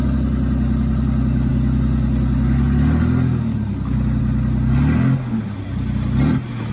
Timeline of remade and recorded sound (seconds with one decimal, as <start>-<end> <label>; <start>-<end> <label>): 0.0-6.7 recorded